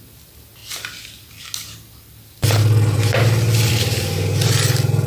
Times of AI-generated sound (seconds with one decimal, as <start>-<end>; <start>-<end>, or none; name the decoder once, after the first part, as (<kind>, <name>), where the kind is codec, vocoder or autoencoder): none